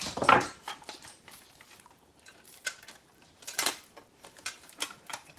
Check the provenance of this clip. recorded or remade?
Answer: remade